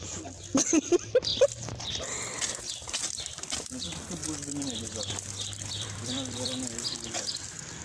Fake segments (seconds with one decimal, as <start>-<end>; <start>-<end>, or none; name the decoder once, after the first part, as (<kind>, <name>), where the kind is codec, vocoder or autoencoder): 0.0-1.3 (vocoder, BigVGAN v2); 2.6-4.2; 4.8-7.8